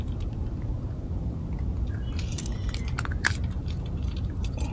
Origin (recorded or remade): remade